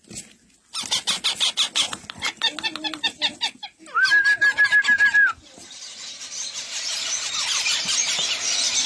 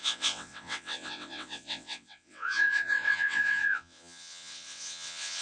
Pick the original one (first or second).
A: first